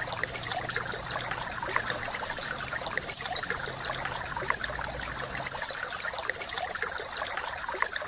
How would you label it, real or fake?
real